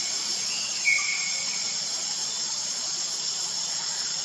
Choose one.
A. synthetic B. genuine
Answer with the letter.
A